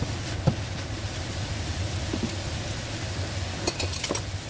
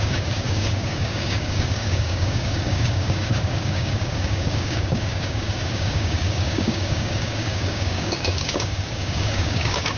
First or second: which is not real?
second